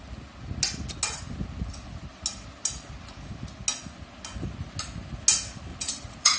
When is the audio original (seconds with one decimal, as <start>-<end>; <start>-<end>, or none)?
0.0-5.7